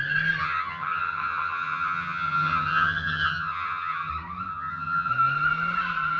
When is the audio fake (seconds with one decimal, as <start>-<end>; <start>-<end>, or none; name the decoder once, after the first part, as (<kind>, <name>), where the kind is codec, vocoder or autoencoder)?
0.4-4.1 (vocoder, HiFi-GAN); 4.5-5.1